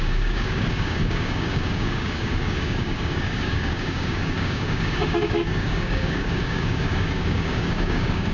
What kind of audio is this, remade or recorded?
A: remade